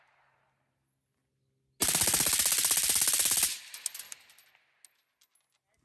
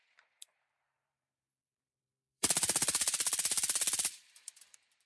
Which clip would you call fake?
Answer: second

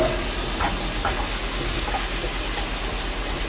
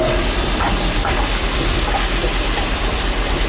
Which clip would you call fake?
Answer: second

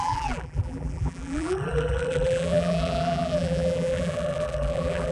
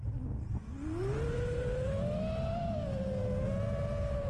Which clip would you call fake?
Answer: first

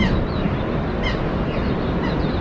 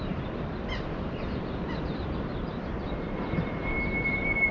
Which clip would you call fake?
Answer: second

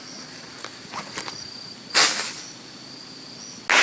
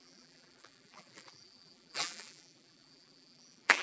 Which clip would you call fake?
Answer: second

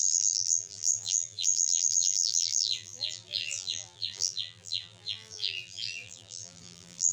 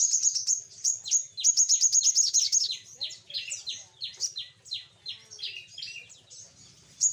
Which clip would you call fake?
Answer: first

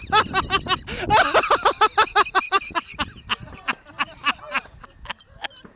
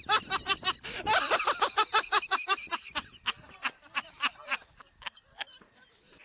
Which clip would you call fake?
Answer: second